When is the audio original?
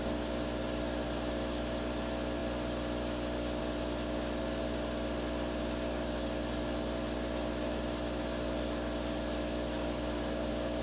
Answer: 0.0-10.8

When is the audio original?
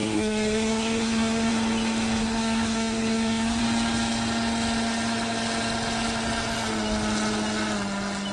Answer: 1.5-2.2; 3.6-8.3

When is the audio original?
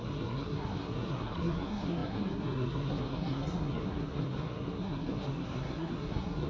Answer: none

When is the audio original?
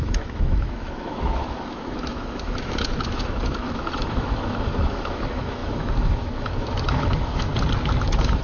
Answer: 7.5-8.0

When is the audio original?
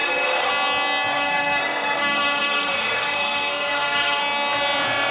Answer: 0.5-1.1; 4.2-5.1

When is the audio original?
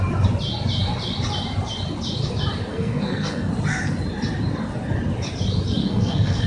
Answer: 0.0-2.7; 3.5-5.8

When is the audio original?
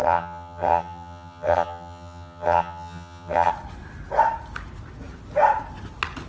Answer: 3.5-6.3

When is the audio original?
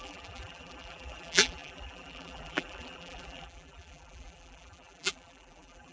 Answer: none